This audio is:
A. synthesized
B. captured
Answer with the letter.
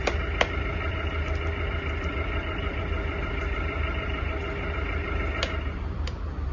A